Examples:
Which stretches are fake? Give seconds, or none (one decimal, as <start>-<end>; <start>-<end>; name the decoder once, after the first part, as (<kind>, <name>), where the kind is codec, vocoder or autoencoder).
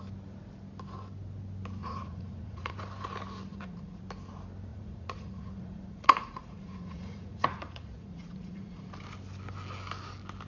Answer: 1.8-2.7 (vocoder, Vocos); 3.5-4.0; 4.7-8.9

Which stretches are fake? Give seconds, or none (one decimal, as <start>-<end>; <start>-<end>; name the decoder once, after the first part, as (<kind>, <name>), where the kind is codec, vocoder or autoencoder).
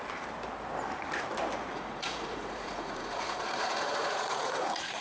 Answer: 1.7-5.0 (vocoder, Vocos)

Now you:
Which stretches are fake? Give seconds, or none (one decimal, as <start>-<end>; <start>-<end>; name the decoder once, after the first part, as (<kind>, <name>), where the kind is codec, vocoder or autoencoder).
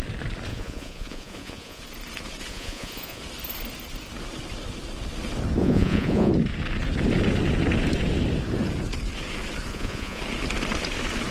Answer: 0.5-1.8 (vocoder, Vocos); 2.5-3.2; 5.6-6.3; 9.7-10.2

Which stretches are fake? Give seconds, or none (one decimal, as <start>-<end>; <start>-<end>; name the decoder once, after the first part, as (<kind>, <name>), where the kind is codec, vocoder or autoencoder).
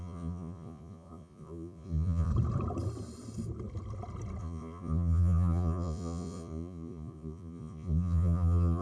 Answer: 0.0-2.3 (vocoder, Vocos); 4.4-8.8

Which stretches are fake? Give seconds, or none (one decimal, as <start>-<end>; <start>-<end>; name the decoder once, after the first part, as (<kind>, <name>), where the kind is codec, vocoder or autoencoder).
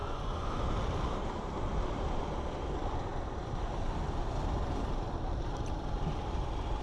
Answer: 0.0-0.6 (vocoder, Vocos)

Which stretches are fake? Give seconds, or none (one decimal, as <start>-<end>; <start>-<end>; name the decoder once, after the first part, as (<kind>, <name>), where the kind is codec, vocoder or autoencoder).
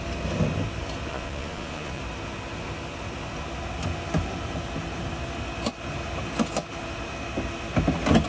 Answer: 1.1-2.0 (vocoder, Vocos)